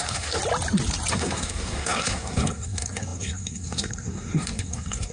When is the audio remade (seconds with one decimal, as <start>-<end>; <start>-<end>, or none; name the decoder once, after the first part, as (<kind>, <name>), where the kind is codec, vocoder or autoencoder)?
0.0-0.4 (codec, SNAC); 1.1-5.1